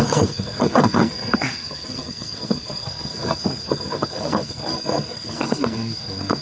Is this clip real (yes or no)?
no